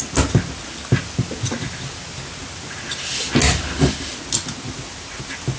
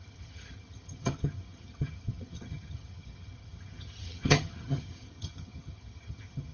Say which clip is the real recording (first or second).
first